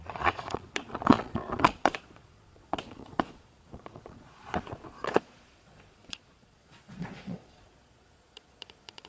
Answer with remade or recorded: remade